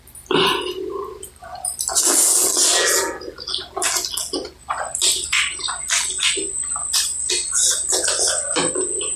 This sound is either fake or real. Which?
real